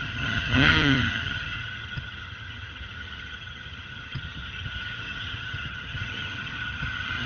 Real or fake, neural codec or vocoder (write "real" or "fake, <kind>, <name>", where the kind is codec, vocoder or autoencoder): fake, vocoder, HiFi-GAN